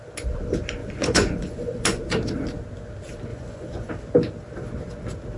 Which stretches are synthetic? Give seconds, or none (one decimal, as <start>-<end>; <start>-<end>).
0.8-2.0; 3.3-3.9